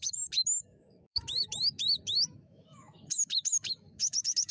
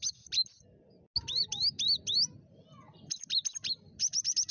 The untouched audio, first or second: second